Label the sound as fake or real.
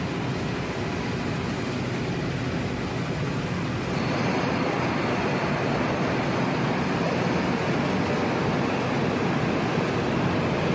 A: real